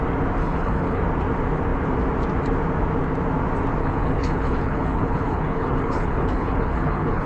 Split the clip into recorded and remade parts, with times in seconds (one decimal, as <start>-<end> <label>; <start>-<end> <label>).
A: 0.0-0.4 recorded; 0.4-1.0 remade; 1.0-3.8 recorded; 3.8-7.3 remade